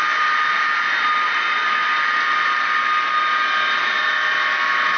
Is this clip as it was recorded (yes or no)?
yes